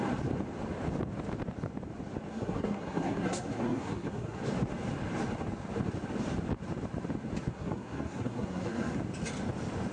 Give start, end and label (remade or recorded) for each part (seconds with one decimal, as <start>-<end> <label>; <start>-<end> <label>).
0.0-2.3 recorded; 2.3-4.4 remade; 4.4-7.5 recorded; 7.5-9.0 remade; 9.0-9.9 recorded

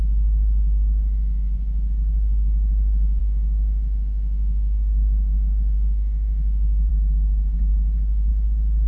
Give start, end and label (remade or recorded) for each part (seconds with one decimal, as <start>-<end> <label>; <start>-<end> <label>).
0.0-3.2 recorded; 3.2-6.9 remade; 6.9-8.9 recorded

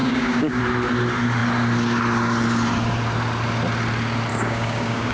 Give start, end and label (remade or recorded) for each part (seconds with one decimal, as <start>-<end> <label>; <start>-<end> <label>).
0.0-0.6 remade; 0.6-4.3 recorded; 4.3-5.1 remade

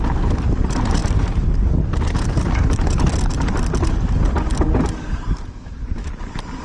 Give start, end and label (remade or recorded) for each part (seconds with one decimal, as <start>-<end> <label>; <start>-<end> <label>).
0.0-5.5 recorded; 5.5-6.1 remade; 6.1-6.6 recorded

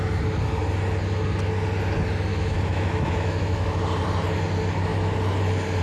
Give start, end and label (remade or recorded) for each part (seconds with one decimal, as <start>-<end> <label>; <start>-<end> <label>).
0.0-2.3 recorded; 2.3-3.8 remade; 3.8-5.8 recorded

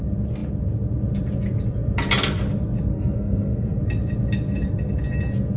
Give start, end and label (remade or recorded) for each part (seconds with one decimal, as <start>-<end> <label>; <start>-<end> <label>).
0.0-2.9 recorded; 2.9-3.8 remade; 3.8-5.6 recorded

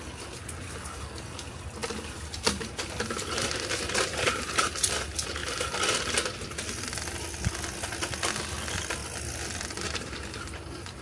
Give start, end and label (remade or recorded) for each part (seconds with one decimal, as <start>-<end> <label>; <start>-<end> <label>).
0.0-11.0 recorded

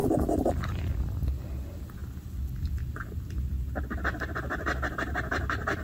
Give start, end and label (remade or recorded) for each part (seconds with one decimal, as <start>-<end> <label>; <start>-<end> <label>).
0.0-0.5 remade; 0.5-5.8 recorded